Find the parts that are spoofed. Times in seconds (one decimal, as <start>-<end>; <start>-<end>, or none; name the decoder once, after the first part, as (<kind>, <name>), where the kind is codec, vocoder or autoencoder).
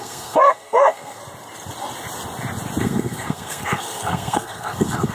0.0-1.2 (codec, SNAC); 2.8-5.1